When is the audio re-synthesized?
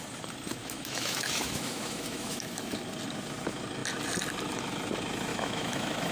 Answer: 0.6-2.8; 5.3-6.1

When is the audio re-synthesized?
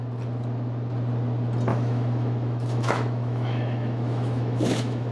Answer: 1.7-5.1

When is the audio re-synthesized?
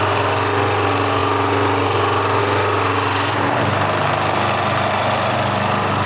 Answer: none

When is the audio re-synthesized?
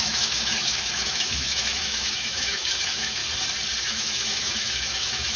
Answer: 0.0-3.2; 3.8-5.4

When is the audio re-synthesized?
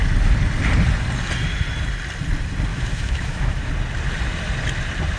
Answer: 2.7-3.7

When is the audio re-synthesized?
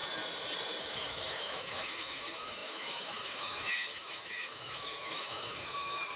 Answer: 0.8-6.2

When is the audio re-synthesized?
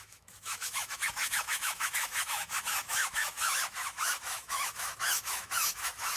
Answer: 0.0-6.2